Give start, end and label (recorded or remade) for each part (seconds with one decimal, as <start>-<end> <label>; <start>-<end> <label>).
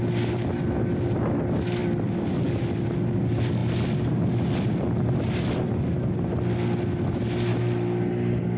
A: 0.0-8.6 recorded